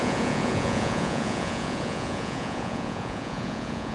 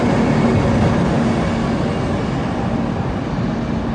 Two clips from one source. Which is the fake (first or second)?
first